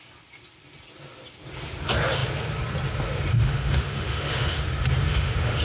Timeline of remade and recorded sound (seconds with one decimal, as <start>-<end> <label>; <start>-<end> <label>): 0.0-3.3 recorded; 3.3-4.6 remade; 4.6-5.1 recorded; 5.1-5.6 remade